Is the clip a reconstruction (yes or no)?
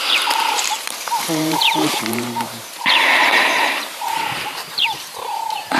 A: yes